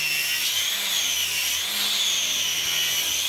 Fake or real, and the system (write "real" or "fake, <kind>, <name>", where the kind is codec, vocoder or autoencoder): real